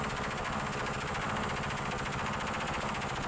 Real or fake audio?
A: real